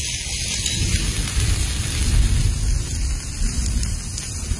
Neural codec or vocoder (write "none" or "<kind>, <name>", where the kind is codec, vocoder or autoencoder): none